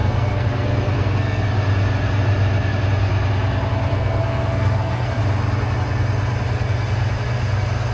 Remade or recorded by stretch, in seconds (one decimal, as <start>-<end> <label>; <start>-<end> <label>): 0.0-1.4 remade; 1.4-3.9 recorded; 3.9-5.2 remade; 5.2-7.9 recorded